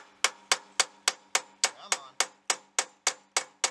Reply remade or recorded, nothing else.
recorded